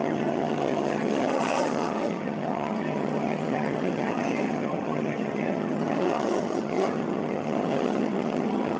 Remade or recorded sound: remade